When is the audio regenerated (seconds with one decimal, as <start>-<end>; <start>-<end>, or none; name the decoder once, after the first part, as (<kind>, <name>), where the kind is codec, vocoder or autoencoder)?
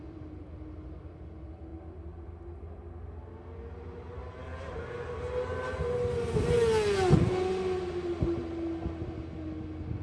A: none